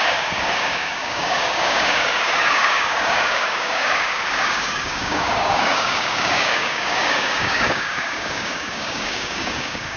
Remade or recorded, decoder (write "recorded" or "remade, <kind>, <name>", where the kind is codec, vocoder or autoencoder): remade, codec, DAC